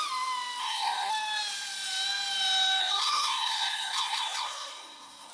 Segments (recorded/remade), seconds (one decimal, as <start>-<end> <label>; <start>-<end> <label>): 0.0-0.6 recorded; 0.6-1.1 remade; 1.1-2.8 recorded; 2.8-5.3 remade